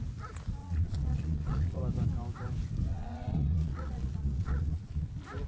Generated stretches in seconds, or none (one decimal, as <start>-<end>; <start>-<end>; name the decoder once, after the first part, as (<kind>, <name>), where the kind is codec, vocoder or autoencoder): 0.6-1.8 (vocoder, Vocos); 2.9-5.1